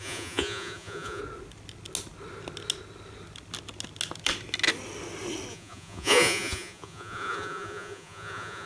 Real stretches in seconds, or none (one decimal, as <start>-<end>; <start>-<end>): 1.2-5.5